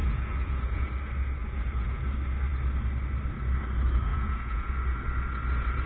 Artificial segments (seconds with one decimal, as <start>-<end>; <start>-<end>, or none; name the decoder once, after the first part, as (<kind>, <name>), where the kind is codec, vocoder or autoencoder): 0.0-0.9 (vocoder, Vocos); 1.4-2.0; 4.1-4.7